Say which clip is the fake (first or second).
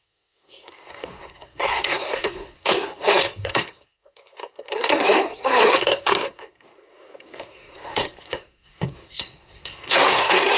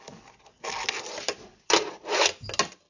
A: first